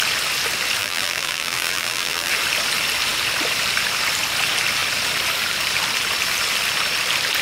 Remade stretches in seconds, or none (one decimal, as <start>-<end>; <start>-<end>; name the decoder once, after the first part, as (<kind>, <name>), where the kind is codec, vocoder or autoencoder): 0.8-2.3 (vocoder, BigVGAN v2)